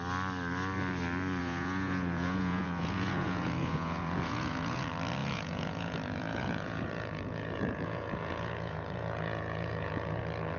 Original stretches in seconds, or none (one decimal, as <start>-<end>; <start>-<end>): 0.0-1.4; 4.8-5.2; 10.2-10.6